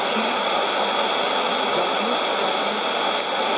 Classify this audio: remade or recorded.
recorded